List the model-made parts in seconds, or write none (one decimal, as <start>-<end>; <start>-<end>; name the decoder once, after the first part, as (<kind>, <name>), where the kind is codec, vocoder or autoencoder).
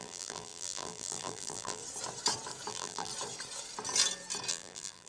0.0-1.8 (vocoder, BigVGAN v2); 2.7-3.1; 4.5-5.1